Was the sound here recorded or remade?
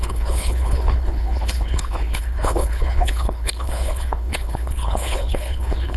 remade